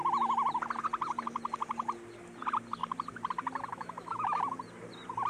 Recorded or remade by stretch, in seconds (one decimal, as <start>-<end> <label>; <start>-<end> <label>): 0.0-3.7 recorded; 3.7-4.4 remade; 4.4-5.3 recorded